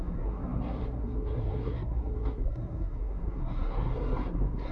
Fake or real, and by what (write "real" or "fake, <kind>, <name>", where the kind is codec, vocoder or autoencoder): fake, codec, SNAC